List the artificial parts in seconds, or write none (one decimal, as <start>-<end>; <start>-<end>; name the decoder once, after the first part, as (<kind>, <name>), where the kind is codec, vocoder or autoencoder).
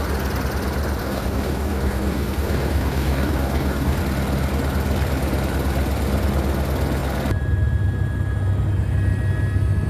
1.0-4.0 (codec, DAC)